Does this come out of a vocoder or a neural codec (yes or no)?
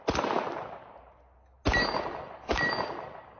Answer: no